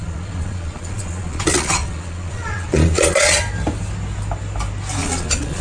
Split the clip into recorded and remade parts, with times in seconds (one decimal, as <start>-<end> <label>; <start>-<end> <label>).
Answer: 0.0-3.4 remade; 3.4-5.0 recorded; 5.0-5.6 remade